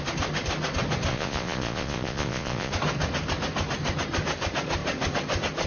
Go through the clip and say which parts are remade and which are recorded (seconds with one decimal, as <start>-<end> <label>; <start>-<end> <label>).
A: 0.0-1.1 recorded; 1.1-2.7 remade; 2.7-5.7 recorded